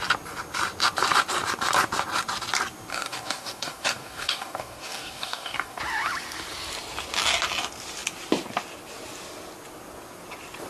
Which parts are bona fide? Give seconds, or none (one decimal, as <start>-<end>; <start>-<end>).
0.0-2.9; 5.8-10.7